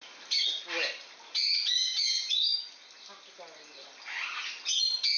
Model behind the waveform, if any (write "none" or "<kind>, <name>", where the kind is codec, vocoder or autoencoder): none